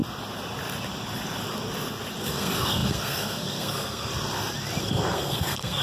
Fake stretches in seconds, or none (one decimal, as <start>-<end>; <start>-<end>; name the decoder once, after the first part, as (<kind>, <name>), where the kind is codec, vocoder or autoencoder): 2.2-4.1 (codec, SNAC); 4.8-5.8